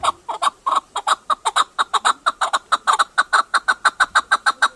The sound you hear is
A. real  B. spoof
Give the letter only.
B